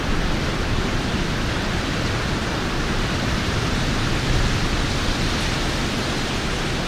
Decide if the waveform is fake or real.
real